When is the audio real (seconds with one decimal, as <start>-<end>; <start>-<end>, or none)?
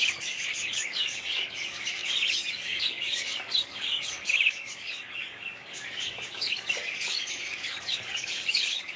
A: none